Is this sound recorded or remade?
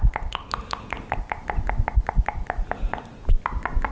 recorded